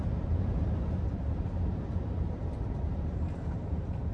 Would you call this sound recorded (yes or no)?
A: no